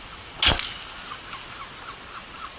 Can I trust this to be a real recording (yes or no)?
yes